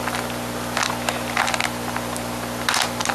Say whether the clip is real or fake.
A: real